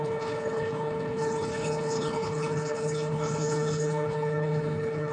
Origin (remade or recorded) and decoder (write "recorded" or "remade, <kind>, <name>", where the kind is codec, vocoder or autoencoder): remade, codec, HILCodec